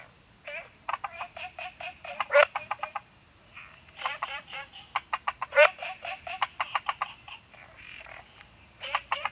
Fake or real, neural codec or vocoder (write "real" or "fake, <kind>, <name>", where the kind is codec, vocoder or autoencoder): fake, vocoder, BigVGAN v2